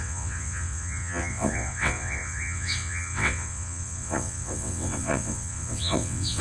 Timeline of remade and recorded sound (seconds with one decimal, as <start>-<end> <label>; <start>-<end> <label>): 0.0-6.4 remade